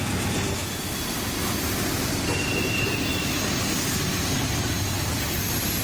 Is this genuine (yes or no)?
yes